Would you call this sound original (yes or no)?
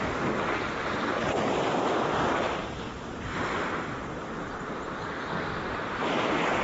yes